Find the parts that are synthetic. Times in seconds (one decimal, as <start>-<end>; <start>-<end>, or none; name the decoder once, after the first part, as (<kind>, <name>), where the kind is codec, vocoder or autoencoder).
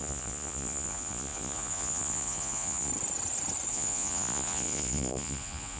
0.0-2.9 (vocoder, Vocos); 3.7-5.8